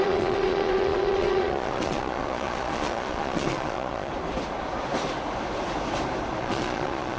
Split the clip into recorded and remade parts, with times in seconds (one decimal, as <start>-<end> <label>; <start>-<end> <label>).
0.0-4.1 remade; 4.1-6.4 recorded; 6.4-7.2 remade